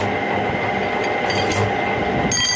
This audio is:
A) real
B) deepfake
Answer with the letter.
A